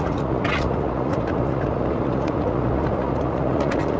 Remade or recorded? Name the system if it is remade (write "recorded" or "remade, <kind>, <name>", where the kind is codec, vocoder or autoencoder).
remade, vocoder, Vocos